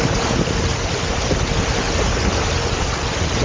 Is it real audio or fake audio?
real